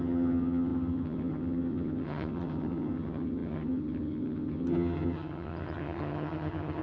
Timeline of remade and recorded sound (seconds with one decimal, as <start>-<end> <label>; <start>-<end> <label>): 0.0-6.8 remade